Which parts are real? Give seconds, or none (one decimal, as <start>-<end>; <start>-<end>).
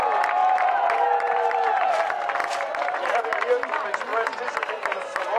0.0-0.4; 1.9-2.4; 3.2-5.4